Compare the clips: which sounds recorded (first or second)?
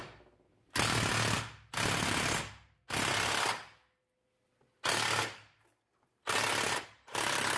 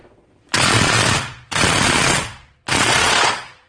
first